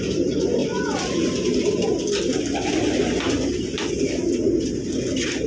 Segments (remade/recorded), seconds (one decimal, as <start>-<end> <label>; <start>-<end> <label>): 0.0-5.5 recorded